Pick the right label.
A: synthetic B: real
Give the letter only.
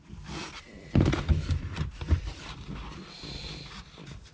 B